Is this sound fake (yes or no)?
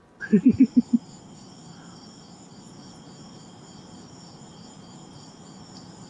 yes